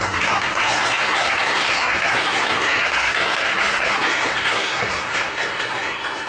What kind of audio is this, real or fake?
fake